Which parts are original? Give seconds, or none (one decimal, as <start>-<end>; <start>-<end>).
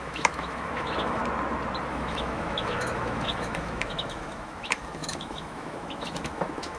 1.2-1.9